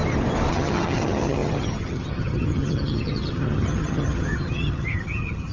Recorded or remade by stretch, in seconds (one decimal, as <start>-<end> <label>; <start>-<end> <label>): 0.0-0.5 recorded; 0.5-5.5 remade

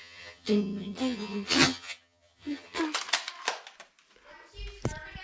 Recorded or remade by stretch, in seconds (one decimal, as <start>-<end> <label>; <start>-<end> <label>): 0.0-2.8 remade; 2.8-5.2 recorded